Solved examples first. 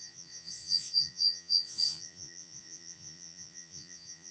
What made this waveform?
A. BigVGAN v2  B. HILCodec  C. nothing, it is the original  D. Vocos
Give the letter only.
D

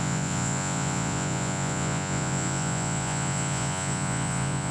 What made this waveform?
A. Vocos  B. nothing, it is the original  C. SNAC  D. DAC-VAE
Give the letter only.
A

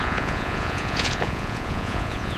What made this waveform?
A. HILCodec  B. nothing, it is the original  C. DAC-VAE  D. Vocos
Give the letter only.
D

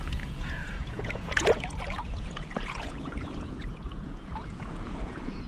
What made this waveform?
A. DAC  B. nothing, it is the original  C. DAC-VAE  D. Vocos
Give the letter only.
D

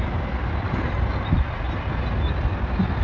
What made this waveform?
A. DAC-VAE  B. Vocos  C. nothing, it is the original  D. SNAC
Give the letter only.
C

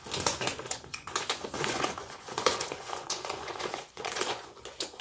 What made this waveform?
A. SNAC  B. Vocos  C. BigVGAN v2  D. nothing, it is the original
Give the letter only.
B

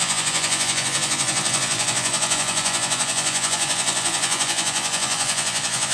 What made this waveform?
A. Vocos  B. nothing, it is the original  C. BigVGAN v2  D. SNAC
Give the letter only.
A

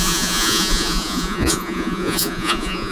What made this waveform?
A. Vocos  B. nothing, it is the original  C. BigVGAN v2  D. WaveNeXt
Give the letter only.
A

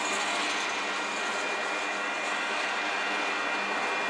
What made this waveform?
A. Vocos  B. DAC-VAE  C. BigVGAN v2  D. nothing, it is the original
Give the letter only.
D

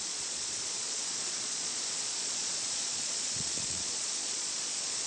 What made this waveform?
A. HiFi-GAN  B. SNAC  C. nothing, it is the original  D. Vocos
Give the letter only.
D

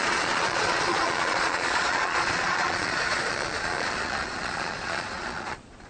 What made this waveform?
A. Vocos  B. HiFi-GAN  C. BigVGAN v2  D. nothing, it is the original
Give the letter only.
A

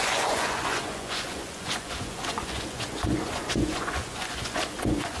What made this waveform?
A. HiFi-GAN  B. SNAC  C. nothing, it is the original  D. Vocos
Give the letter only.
D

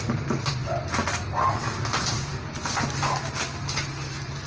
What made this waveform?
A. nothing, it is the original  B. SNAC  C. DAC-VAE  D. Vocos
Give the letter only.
A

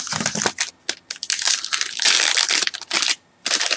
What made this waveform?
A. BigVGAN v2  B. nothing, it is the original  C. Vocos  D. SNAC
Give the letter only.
B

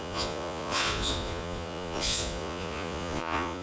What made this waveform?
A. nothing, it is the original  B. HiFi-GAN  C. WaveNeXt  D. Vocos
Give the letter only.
D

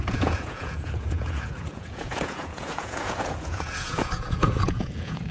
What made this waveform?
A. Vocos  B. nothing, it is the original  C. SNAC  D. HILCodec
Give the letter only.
A